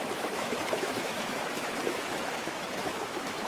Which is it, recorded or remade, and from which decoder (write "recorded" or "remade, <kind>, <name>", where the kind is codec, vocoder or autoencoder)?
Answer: remade, autoencoder, DAC-VAE